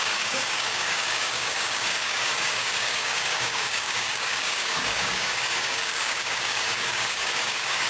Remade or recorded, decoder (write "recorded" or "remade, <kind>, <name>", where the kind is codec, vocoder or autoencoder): remade, codec, DAC